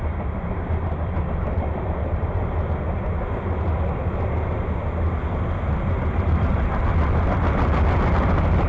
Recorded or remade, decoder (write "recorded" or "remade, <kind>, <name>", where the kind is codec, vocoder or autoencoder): recorded